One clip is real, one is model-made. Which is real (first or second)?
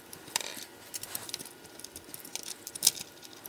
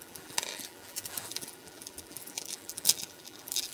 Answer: first